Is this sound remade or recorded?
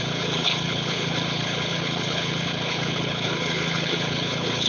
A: remade